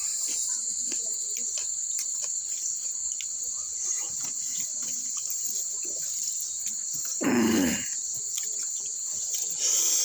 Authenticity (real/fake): fake